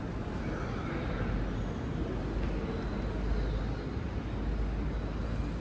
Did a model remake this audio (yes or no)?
no